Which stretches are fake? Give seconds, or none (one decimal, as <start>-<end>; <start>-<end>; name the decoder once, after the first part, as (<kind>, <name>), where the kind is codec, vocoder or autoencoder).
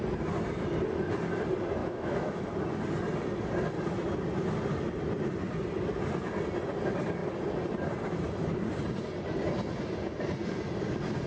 1.8-2.5 (autoencoder, DAC-VAE)